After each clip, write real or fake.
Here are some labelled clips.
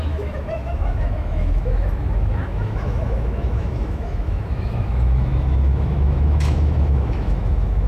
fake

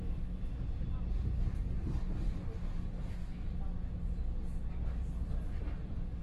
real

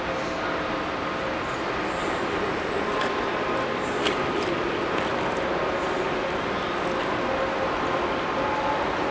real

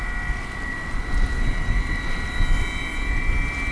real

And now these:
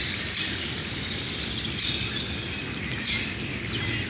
real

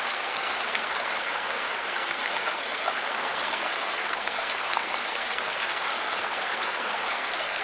fake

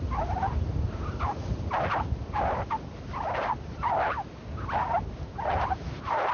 real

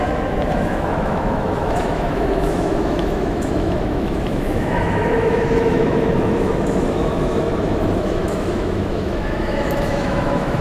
fake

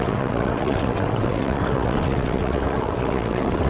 fake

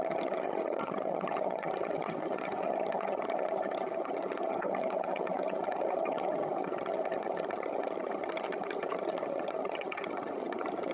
fake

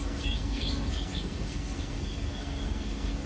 fake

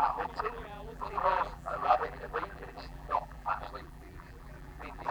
fake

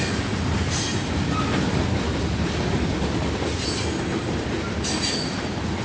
real